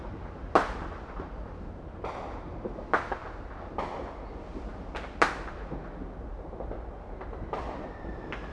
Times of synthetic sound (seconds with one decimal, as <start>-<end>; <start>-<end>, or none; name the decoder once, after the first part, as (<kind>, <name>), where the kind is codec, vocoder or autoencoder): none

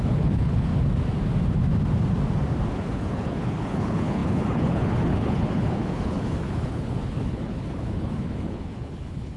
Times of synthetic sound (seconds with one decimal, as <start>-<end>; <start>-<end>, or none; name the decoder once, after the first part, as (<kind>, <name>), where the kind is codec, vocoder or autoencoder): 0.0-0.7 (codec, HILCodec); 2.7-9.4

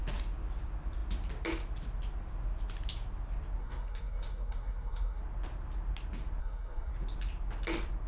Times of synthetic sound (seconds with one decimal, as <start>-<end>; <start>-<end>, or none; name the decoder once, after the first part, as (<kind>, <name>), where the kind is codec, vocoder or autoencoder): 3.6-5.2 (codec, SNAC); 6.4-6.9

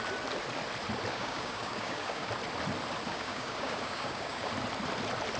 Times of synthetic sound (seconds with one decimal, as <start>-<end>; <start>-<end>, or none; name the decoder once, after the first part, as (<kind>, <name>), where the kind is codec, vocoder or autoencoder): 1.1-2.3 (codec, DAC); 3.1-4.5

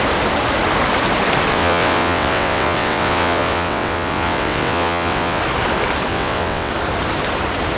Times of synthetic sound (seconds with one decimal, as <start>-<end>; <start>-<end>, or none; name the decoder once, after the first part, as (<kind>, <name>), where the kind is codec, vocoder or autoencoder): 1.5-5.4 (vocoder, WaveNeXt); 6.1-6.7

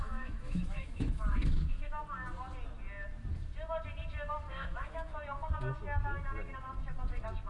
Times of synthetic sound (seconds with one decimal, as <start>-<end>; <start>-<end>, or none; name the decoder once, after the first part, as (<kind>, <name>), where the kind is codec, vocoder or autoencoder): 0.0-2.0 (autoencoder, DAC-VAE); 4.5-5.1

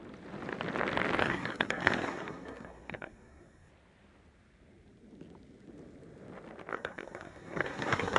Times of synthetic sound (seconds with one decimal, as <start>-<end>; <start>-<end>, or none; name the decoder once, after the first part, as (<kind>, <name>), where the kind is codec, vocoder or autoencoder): 1.2-3.7 (codec, SNAC); 6.7-8.2